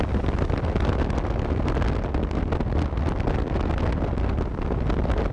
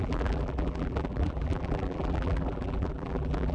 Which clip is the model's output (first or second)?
second